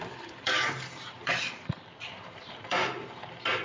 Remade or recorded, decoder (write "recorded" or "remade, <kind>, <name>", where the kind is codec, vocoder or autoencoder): remade, vocoder, BigVGAN v2